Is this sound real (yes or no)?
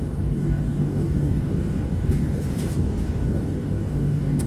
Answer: no